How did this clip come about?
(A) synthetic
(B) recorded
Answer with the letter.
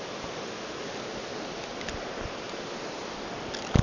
B